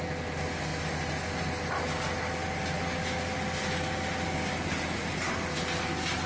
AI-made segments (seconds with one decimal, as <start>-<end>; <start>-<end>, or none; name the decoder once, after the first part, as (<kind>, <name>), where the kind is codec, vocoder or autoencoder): none